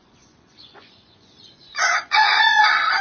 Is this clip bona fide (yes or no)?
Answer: no